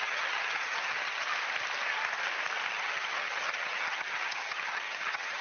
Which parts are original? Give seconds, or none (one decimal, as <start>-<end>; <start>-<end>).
1.3-2.7